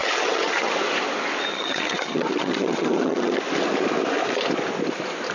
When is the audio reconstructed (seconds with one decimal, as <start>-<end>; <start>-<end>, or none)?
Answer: 0.0-0.7; 1.5-3.4